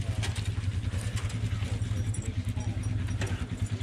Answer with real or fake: real